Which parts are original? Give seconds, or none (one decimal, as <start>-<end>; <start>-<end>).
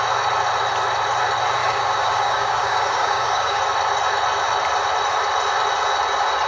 0.0-1.6; 3.6-6.5